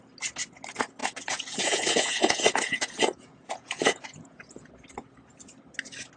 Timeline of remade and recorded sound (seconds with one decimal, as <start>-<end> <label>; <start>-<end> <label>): 0.0-1.0 recorded; 1.0-4.7 remade; 4.7-6.2 recorded